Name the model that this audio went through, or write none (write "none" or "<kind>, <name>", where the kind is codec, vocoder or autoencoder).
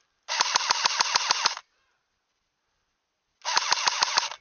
none